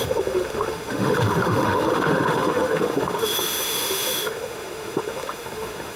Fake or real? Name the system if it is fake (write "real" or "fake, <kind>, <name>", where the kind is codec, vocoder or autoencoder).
fake, autoencoder, DAC-VAE